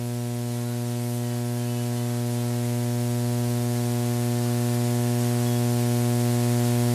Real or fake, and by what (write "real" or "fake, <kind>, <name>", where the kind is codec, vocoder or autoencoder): real